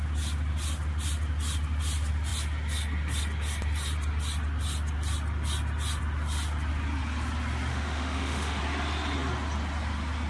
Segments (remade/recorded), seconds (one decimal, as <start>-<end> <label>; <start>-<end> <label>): 0.0-7.7 recorded; 7.7-8.6 remade; 8.6-10.3 recorded